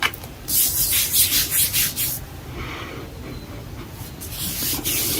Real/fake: real